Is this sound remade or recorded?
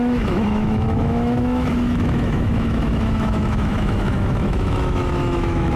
remade